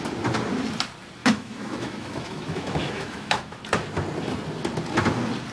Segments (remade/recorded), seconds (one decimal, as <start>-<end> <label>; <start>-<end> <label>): 0.0-1.2 recorded; 1.2-3.6 remade; 3.6-5.5 recorded